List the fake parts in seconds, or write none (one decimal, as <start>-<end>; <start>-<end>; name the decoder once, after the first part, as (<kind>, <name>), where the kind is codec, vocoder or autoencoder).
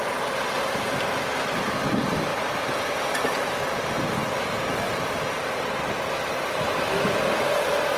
none